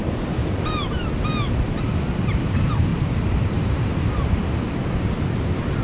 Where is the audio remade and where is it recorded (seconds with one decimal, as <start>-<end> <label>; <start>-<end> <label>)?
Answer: 0.0-0.4 recorded; 0.4-1.1 remade; 1.1-2.9 recorded; 2.9-4.1 remade; 4.1-5.8 recorded

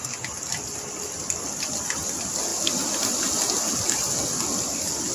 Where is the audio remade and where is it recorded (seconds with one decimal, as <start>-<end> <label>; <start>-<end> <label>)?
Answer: 0.0-2.5 recorded; 2.5-3.2 remade; 3.2-5.1 recorded